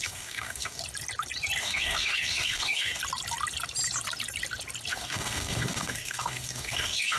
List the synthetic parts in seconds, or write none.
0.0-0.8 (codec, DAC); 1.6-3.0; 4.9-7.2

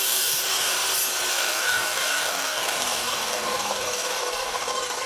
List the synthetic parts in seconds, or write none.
0.0-0.8 (codec, DAC); 1.3-5.1

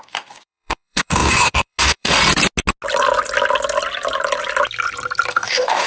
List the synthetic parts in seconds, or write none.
0.0-2.2 (codec, DAC); 5.3-5.9

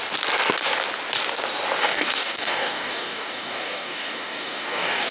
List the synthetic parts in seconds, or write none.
1.8-5.1 (codec, DAC)

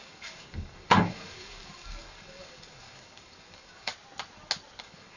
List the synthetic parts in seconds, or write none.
0.0-3.9 (codec, DAC); 4.8-5.2

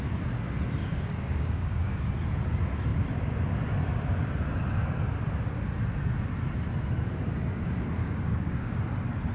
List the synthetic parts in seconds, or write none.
0.8-2.1 (codec, DAC); 8.0-8.8

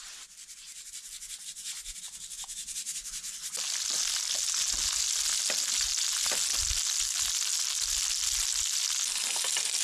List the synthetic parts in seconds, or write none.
none

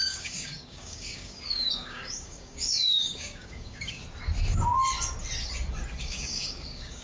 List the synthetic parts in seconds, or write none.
0.0-4.0 (codec, DAC); 6.0-7.0